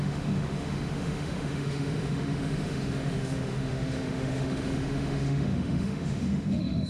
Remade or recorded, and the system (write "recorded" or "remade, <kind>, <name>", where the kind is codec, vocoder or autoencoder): remade, autoencoder, DAC-VAE